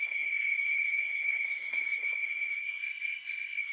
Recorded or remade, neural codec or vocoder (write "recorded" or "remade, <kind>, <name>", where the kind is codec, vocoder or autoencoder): remade, codec, SNAC